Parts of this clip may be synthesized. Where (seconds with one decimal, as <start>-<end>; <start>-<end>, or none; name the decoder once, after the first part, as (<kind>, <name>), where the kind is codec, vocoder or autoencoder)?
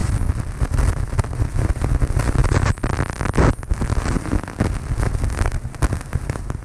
0.0-2.4 (vocoder, BigVGAN v2)